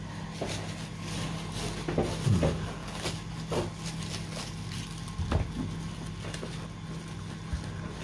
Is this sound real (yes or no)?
yes